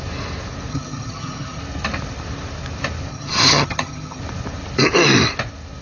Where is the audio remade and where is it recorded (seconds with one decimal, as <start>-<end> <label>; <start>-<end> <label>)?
0.0-0.7 recorded; 0.7-1.6 remade; 1.6-3.1 recorded; 3.1-4.2 remade; 4.2-5.8 recorded